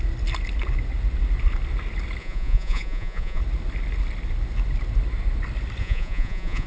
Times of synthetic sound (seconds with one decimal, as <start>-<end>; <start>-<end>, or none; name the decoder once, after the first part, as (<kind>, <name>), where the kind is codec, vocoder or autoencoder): 2.2-3.4 (vocoder, Vocos); 5.8-6.7